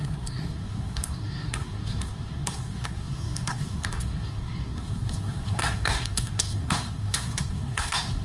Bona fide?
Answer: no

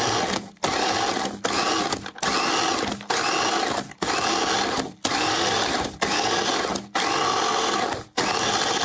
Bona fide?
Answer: yes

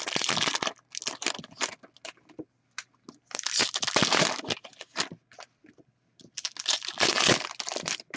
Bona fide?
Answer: yes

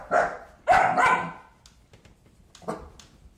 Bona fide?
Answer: yes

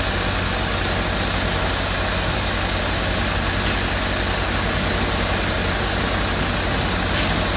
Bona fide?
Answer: yes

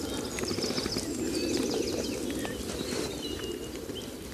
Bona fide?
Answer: yes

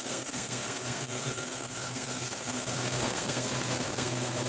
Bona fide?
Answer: no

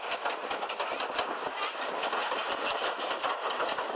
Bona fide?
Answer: yes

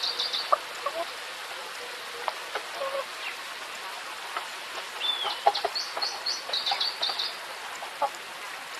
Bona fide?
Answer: yes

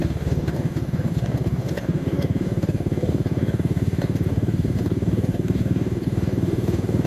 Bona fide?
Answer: no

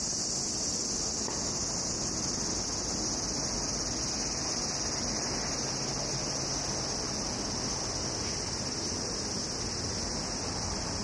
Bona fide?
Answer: yes